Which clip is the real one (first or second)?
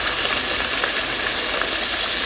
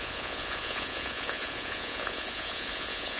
first